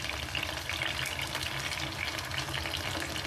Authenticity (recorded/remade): recorded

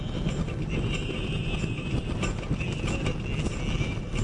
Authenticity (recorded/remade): recorded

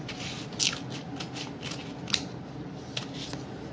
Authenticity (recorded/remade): recorded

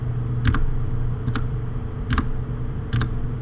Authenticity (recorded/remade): recorded